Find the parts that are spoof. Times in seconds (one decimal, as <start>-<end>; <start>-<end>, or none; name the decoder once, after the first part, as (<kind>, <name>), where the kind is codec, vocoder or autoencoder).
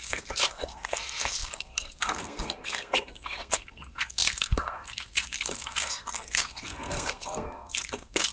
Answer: 0.0-8.3 (codec, SNAC)